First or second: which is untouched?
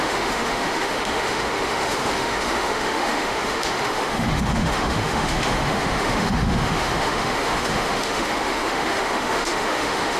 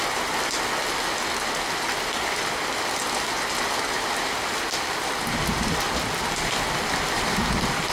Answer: second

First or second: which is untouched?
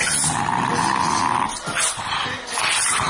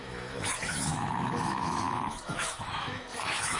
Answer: first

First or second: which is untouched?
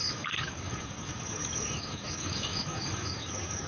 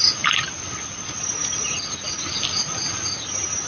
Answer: second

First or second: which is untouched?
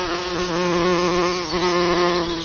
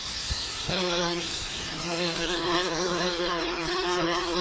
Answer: first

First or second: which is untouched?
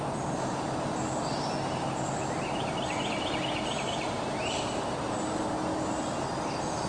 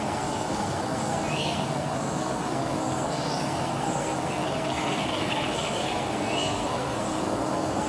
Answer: first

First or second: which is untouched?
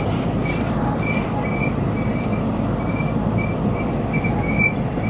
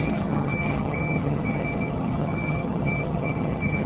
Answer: first